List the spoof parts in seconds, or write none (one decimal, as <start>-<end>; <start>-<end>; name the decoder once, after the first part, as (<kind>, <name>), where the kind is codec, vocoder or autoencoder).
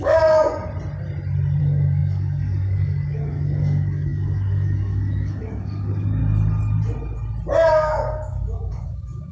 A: 0.0-0.6 (codec, DAC); 1.6-6.2; 7.7-9.3